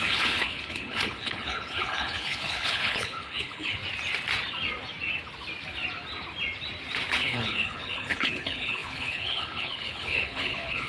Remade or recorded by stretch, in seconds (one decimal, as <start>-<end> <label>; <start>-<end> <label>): 0.0-3.8 remade; 3.8-7.2 recorded; 7.2-10.9 remade